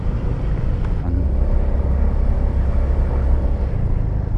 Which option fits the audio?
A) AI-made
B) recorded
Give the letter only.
B